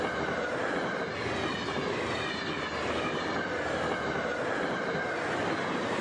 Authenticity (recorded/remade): recorded